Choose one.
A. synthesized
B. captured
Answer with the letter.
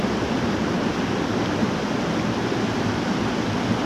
B